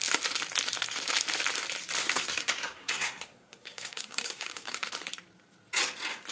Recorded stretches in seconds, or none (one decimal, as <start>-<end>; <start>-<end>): 0.0-2.0; 4.9-6.3